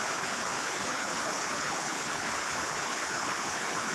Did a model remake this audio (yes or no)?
yes